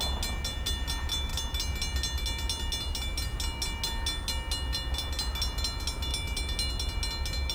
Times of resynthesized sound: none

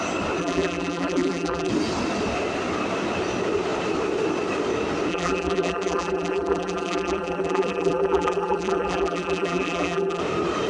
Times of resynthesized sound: 0.4-1.7 (vocoder, BigVGAN v2); 5.1-10.2

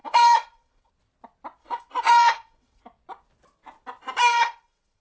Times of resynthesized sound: 0.0-0.9 (vocoder, WaveNeXt); 1.6-2.8; 4.3-5.0

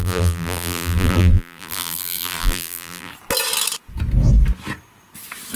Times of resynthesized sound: 0.0-3.1 (vocoder, BigVGAN v2)

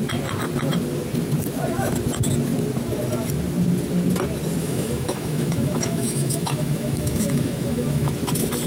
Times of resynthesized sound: 4.6-8.1 (autoencoder, DAC-VAE)

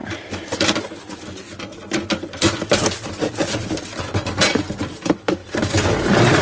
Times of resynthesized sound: 0.0-0.8 (vocoder, BigVGAN v2); 5.4-6.4

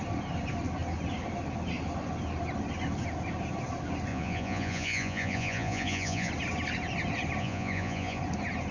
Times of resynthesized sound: 4.1-6.3 (vocoder, Vocos); 7.4-8.2